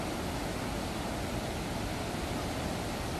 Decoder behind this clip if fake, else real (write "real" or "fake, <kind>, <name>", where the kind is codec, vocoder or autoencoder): real